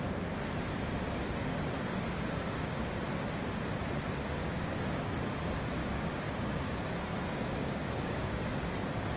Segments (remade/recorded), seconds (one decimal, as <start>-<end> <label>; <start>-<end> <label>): 0.0-1.5 recorded; 1.5-2.8 remade; 2.8-4.4 recorded; 4.4-5.1 remade; 5.1-5.8 recorded; 5.8-6.6 remade; 6.6-7.1 recorded; 7.1-8.4 remade; 8.4-9.2 recorded